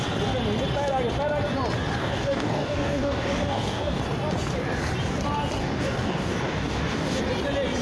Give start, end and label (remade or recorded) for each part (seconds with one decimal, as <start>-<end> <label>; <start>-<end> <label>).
0.0-2.0 recorded; 2.0-4.0 remade; 4.0-5.6 recorded; 5.6-7.2 remade; 7.2-7.8 recorded